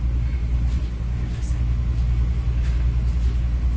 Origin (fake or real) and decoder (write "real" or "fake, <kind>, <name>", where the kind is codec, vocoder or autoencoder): real